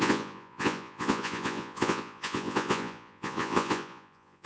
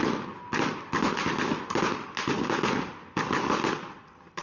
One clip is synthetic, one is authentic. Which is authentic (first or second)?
second